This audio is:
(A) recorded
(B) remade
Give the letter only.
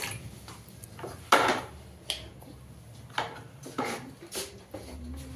A